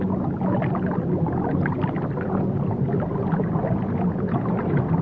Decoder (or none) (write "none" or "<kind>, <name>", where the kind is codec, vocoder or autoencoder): none